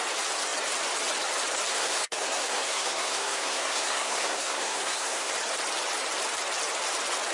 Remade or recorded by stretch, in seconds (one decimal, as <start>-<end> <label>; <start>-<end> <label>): 0.0-1.7 recorded; 1.7-5.3 remade; 5.3-7.3 recorded